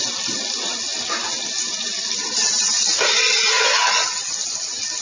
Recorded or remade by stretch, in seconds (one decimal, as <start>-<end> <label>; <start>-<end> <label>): 0.0-5.0 recorded